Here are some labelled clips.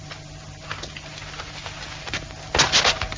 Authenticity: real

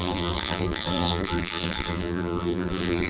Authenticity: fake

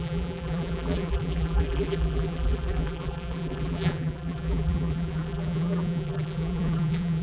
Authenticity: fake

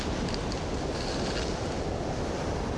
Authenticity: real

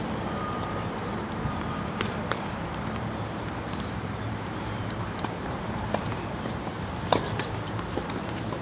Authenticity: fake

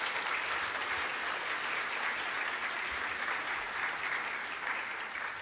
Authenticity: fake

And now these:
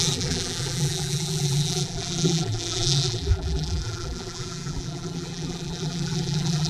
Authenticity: fake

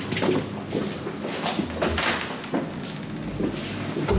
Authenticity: real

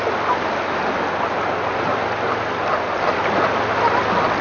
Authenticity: real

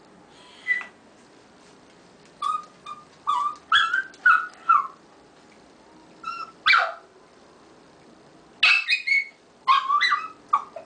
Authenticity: real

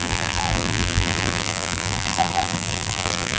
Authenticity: fake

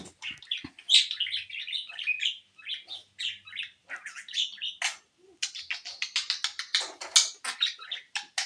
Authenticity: real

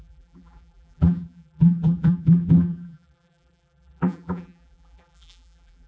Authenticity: fake